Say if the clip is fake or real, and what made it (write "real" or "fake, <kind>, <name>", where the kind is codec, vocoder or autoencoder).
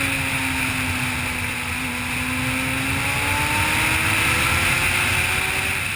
real